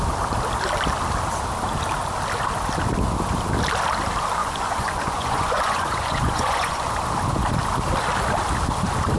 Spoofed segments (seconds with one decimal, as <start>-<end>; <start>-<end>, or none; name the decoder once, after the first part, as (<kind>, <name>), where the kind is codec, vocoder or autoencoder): 4.4-6.9 (vocoder, Vocos)